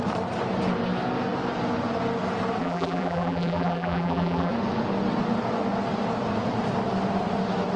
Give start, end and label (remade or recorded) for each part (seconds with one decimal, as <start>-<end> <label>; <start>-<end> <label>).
0.0-2.6 recorded; 2.6-4.5 remade; 4.5-7.8 recorded